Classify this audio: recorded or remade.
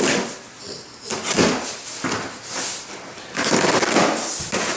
recorded